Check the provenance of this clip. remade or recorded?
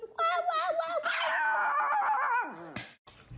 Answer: recorded